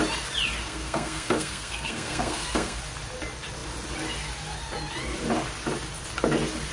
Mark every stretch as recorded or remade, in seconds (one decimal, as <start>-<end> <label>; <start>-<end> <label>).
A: 0.0-0.6 recorded; 0.6-2.8 remade; 2.8-6.7 recorded